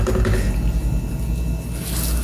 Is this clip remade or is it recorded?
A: recorded